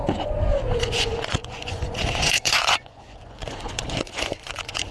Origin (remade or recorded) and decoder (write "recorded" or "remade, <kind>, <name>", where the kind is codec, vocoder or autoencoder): remade, vocoder, Vocos